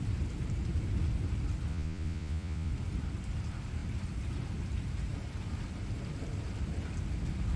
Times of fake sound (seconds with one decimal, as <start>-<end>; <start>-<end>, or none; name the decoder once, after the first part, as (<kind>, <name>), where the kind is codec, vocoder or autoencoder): 1.7-2.7 (vocoder, Vocos)